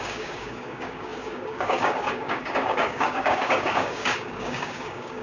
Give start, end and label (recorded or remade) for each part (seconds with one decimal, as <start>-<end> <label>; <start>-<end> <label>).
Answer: 0.0-5.2 remade

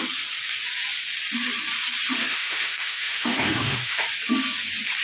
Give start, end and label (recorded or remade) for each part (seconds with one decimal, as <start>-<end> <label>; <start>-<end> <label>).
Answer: 0.0-2.2 recorded; 2.2-4.0 remade; 4.0-5.0 recorded

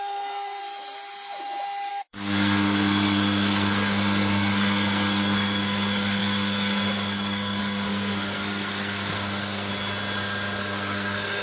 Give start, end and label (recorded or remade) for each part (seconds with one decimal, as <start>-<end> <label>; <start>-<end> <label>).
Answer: 0.0-0.6 remade; 0.6-1.9 recorded; 1.9-9.7 remade; 9.7-10.6 recorded; 10.6-11.4 remade

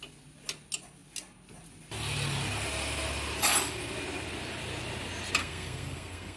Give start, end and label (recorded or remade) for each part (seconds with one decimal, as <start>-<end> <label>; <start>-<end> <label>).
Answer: 0.0-5.4 recorded; 5.4-6.4 remade

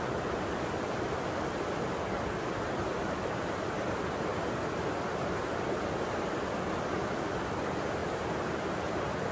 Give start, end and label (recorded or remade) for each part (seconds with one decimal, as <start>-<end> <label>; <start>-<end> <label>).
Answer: 0.0-9.3 recorded

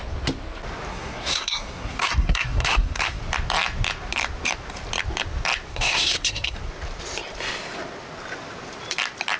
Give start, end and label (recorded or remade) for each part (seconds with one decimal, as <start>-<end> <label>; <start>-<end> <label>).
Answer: 0.0-0.9 recorded; 0.9-3.2 remade; 3.2-5.7 recorded; 5.7-6.6 remade; 6.6-9.4 recorded